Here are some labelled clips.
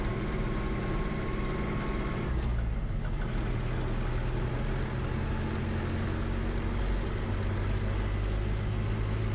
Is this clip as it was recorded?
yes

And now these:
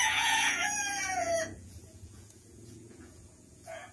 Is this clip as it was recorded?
no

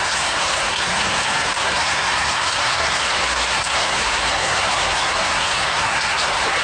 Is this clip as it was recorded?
no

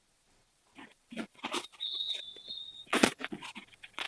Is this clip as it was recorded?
no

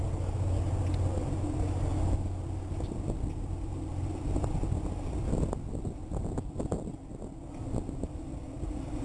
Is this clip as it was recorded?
yes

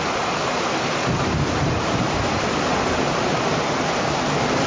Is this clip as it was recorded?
yes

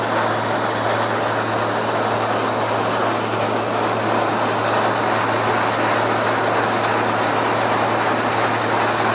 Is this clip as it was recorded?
yes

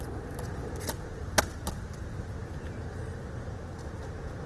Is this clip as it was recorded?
yes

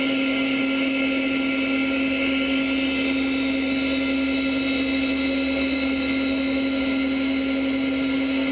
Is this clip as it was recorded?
yes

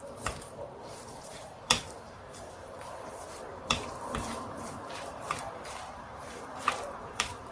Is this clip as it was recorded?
no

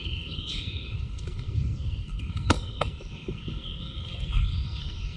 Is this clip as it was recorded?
no